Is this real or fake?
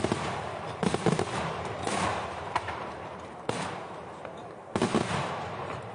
fake